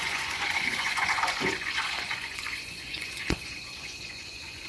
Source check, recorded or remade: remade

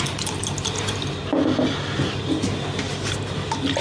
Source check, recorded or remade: recorded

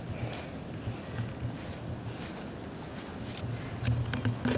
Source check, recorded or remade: recorded